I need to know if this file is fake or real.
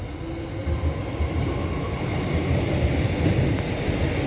real